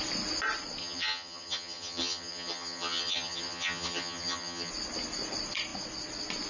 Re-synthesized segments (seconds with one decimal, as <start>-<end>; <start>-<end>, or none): 0.8-4.7